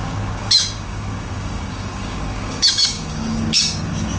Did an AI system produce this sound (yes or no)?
yes